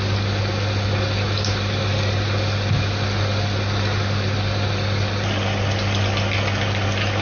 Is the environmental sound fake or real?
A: real